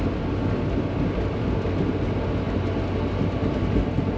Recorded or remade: recorded